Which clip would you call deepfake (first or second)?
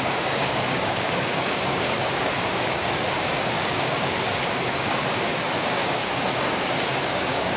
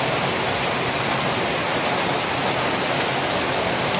first